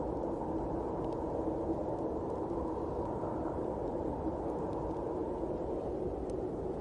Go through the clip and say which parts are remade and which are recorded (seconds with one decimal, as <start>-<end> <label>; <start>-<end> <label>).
0.0-6.8 recorded